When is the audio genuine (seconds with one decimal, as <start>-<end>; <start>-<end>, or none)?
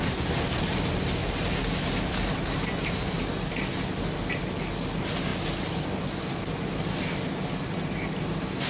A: 0.0-8.7